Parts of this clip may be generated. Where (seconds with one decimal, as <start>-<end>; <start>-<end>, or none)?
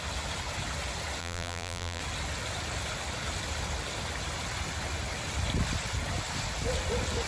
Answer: 1.2-2.0